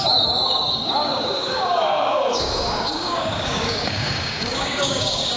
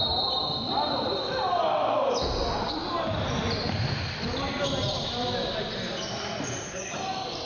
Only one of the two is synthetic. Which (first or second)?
first